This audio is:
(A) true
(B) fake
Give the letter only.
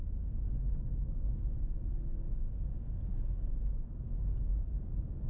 A